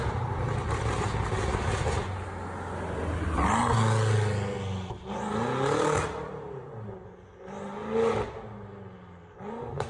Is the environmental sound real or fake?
real